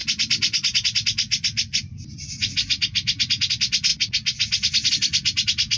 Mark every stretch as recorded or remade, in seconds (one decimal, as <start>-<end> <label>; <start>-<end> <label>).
0.0-5.8 recorded